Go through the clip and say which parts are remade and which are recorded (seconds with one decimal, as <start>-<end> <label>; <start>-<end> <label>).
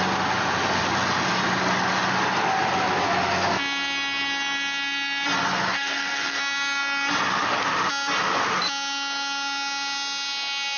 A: 0.0-5.7 recorded; 5.7-6.4 remade; 6.4-10.8 recorded